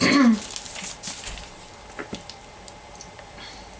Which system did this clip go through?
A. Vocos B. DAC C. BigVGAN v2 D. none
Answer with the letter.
D